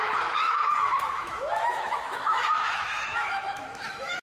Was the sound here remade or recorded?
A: remade